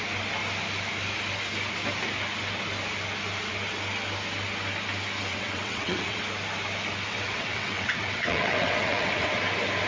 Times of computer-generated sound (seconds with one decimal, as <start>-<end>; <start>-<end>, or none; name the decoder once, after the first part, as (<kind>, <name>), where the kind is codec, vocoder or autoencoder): 5.3-6.2 (vocoder, WaveNeXt); 7.1-9.3